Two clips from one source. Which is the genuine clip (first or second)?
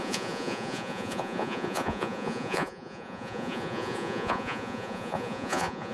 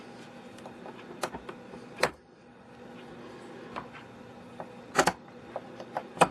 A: second